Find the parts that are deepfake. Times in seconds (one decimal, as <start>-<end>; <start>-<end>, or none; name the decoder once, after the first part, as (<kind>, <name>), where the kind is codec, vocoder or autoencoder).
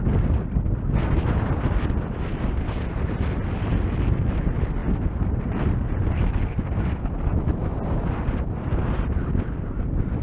none